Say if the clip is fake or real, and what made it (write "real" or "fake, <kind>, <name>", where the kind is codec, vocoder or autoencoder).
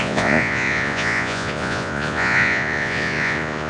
fake, vocoder, Vocos